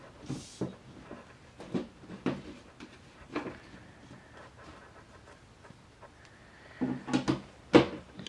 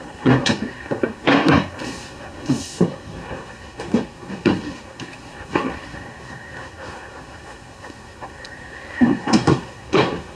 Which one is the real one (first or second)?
first